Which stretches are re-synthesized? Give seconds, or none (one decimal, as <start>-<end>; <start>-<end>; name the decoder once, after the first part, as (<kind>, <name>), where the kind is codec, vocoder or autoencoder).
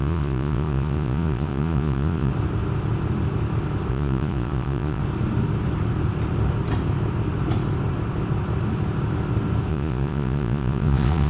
0.0-2.3 (vocoder, Vocos); 3.9-5.0; 9.7-11.3